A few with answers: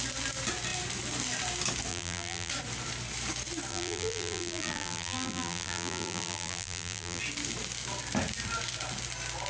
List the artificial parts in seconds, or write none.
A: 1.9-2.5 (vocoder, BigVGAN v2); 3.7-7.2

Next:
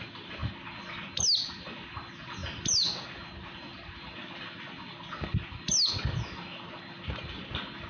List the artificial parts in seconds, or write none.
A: none

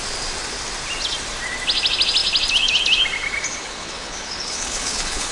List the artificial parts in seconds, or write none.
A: 3.6-5.3 (codec, HILCodec)

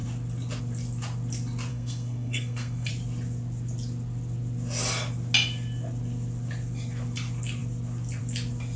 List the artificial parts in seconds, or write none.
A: 1.7-2.9 (codec, SNAC)

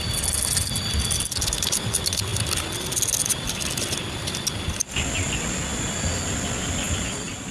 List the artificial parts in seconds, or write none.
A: none

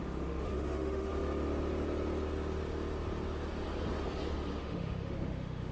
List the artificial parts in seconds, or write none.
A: 0.0-1.1 (autoencoder, DAC-VAE); 4.5-5.7

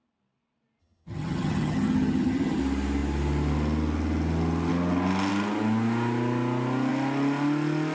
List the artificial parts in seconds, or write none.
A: 0.8-2.6 (vocoder, HiFi-GAN)